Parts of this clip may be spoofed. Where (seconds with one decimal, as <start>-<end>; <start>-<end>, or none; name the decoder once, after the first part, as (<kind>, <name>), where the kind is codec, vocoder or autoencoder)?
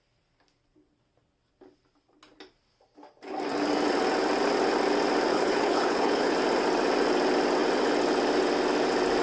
5.3-6.3 (codec, HILCodec)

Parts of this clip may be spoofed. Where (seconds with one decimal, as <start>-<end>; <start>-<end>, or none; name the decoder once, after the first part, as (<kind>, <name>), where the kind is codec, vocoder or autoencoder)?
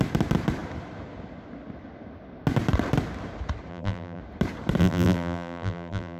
3.7-4.2 (vocoder, BigVGAN v2); 4.8-6.2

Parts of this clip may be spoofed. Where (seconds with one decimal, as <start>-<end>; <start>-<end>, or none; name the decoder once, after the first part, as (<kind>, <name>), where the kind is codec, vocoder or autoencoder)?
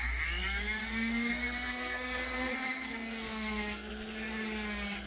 0.8-3.9 (codec, SNAC)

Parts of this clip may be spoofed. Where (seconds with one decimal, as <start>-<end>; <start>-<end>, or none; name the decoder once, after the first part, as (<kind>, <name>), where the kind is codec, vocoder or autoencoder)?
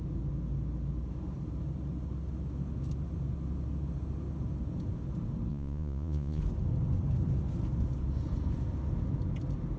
5.5-6.4 (vocoder, Vocos)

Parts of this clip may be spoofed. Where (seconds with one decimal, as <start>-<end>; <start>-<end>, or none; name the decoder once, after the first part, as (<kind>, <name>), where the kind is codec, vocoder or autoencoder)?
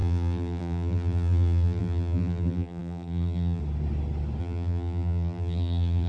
0.0-3.6 (vocoder, BigVGAN v2); 4.4-6.1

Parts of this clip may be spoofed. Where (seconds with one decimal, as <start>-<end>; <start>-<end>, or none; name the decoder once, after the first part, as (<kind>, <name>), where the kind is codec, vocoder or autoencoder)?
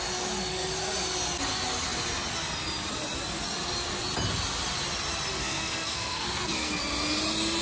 5.3-6.8 (codec, SNAC)